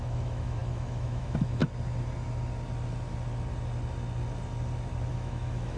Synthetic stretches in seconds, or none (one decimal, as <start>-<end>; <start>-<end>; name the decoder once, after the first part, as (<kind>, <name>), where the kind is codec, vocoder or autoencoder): 0.0-1.6 (autoencoder, DAC-VAE); 5.1-5.8